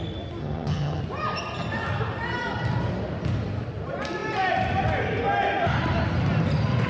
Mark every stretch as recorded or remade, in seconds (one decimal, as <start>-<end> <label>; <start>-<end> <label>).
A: 0.0-0.4 recorded; 0.4-1.0 remade; 1.0-6.9 recorded